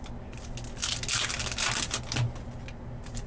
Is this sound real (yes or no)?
yes